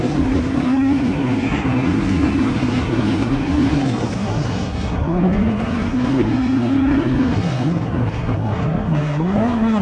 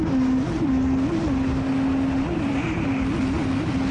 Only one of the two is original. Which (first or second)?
second